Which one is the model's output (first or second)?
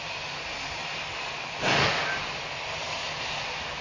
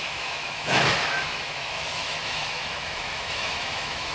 second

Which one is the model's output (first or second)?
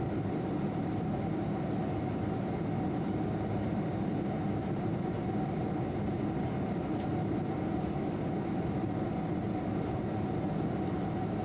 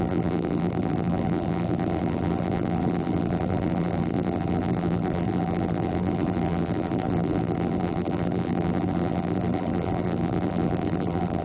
second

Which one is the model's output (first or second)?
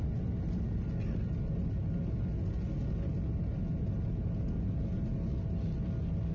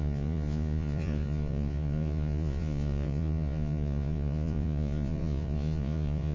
second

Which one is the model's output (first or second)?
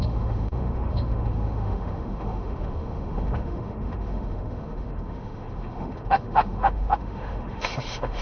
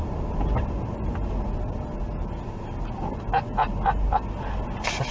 first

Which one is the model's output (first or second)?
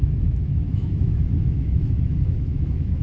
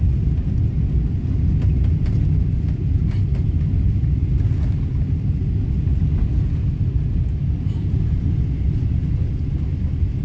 first